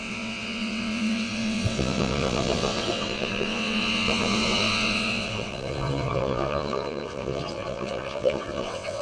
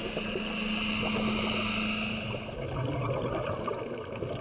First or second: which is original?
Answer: second